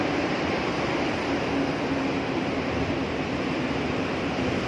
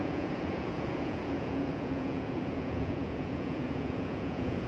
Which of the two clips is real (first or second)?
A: first